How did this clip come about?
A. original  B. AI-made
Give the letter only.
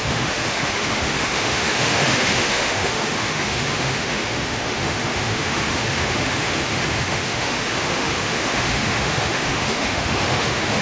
B